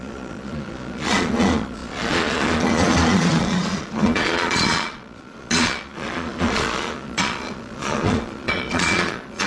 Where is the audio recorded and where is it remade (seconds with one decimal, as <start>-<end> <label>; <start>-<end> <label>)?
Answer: 0.0-9.5 remade